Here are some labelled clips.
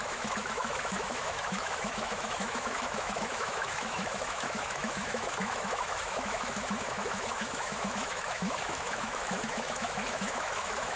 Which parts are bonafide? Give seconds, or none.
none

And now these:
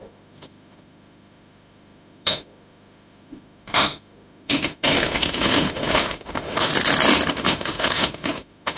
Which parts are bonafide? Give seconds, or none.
6.7-7.3

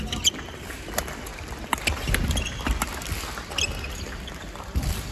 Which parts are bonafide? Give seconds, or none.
0.0-5.1

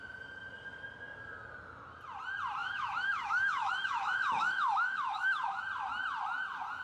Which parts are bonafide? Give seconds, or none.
0.0-2.6; 5.6-6.8

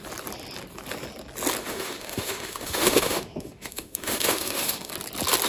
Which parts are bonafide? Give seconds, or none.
0.0-1.6; 4.9-5.5

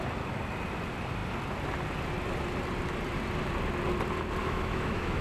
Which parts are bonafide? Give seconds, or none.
0.0-4.4

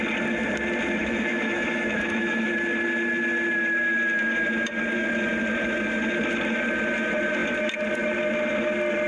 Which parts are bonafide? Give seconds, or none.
0.0-1.0; 2.5-9.1

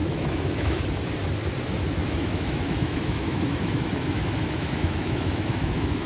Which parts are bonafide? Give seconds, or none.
0.8-2.0